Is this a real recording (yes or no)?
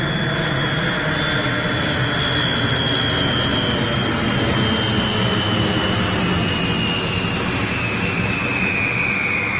yes